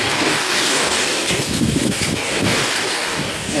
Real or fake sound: fake